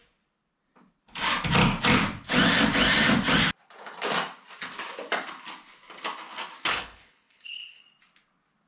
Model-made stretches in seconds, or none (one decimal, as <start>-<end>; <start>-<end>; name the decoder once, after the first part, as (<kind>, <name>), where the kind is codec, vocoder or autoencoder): 6.7-7.8 (codec, HILCodec)